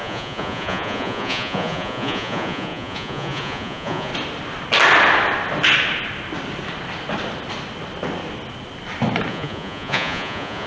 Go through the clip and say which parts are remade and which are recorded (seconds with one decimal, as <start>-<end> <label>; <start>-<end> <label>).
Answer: 0.0-4.1 remade; 4.1-9.3 recorded; 9.3-10.7 remade